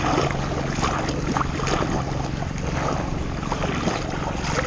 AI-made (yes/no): no